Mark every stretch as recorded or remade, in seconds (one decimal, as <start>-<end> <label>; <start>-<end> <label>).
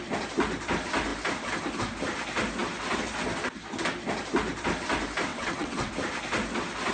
0.0-5.3 recorded; 5.3-5.9 remade; 5.9-6.9 recorded